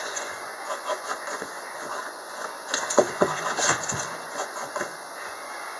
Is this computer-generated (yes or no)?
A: yes